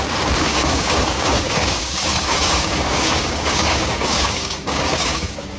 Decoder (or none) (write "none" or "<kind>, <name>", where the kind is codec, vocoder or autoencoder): codec, DAC